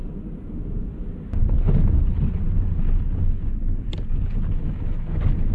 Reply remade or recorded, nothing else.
recorded